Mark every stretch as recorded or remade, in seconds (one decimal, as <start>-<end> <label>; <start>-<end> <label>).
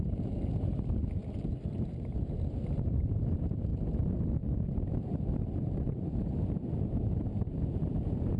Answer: 0.0-1.2 recorded; 1.2-2.0 remade; 2.0-3.7 recorded; 3.7-7.1 remade; 7.1-8.4 recorded